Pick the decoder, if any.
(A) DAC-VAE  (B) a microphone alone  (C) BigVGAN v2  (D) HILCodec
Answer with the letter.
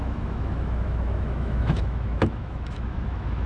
A